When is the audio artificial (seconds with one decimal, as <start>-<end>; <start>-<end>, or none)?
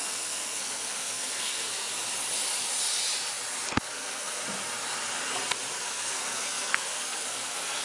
0.0-1.9; 3.8-4.4; 5.8-7.8